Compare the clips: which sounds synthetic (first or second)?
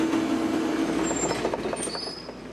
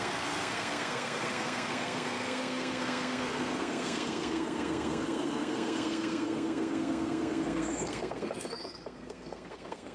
second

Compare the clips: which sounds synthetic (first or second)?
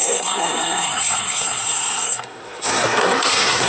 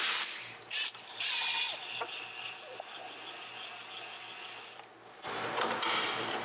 first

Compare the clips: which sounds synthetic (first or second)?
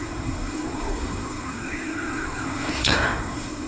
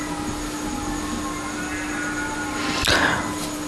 first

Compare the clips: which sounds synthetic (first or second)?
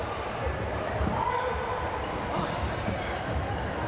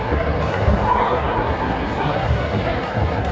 second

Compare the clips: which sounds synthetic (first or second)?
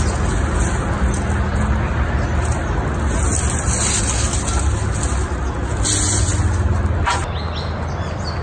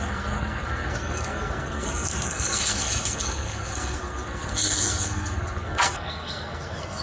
second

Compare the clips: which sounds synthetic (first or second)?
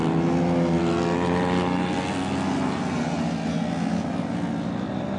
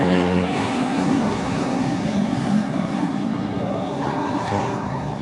second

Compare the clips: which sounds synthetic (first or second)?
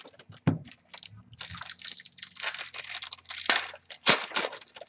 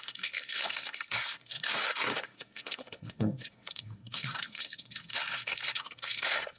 second